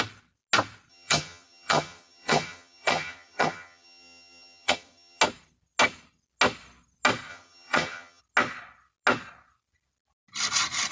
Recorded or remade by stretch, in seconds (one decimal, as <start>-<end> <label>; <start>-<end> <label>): 0.0-0.9 recorded; 0.9-5.2 remade; 5.2-7.3 recorded; 7.3-8.2 remade; 8.2-10.9 recorded